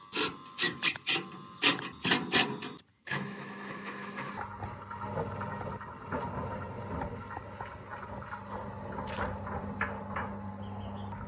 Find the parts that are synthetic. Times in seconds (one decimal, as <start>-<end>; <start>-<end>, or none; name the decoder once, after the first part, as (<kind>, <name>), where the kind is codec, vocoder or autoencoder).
2.9-4.3 (autoencoder, DAC-VAE)